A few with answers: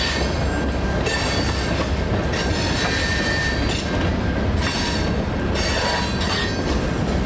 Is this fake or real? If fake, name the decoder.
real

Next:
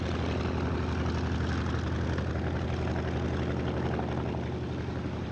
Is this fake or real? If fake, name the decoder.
real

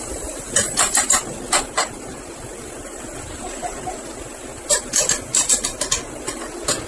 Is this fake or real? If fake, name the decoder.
real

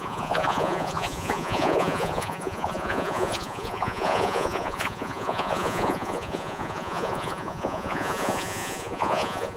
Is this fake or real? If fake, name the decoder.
fake, vocoder, Vocos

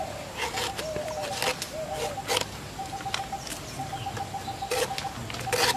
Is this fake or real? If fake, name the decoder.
real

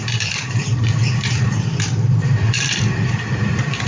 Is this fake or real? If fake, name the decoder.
fake, vocoder, BigVGAN v2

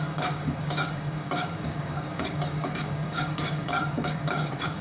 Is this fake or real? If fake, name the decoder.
fake, codec, DAC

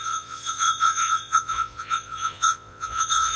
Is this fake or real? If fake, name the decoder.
fake, vocoder, Vocos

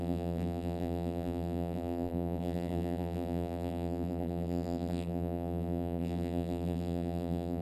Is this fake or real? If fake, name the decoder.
fake, vocoder, BigVGAN v2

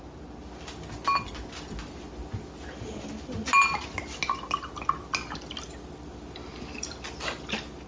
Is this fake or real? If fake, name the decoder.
real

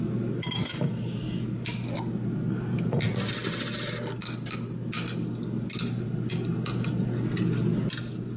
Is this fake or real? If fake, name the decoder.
real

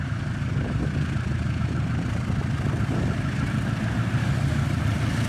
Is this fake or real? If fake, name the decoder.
real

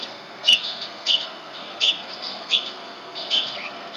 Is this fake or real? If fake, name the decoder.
fake, codec, SNAC